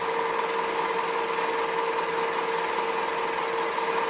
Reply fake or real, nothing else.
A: real